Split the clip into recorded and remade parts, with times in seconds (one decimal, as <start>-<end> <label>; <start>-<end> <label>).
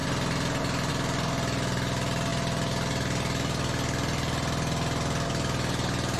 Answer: 0.0-6.2 recorded